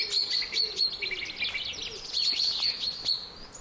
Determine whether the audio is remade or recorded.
recorded